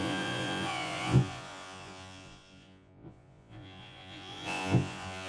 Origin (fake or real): fake